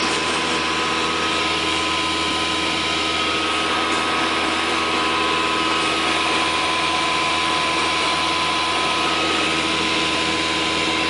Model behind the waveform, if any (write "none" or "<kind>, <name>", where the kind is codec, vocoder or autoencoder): none